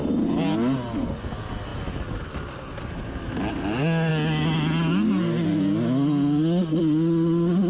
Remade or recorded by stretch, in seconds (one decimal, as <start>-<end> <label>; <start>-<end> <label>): 0.0-7.7 recorded